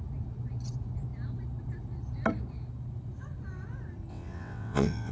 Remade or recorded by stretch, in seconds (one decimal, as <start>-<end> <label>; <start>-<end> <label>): 0.0-4.1 recorded; 4.1-5.1 remade